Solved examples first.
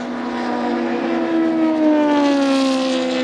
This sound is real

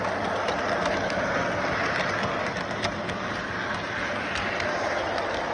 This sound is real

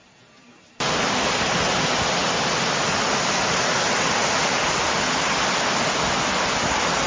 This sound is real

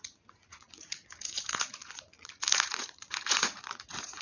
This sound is fake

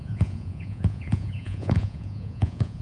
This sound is fake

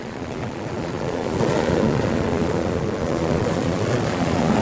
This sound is fake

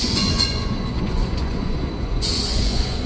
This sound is fake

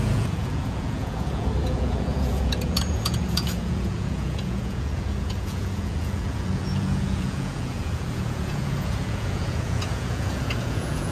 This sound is fake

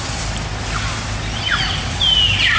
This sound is real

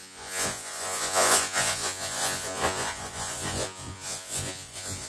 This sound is fake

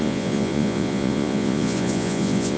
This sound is fake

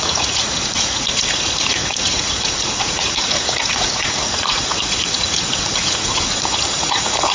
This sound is fake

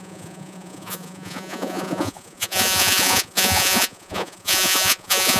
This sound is fake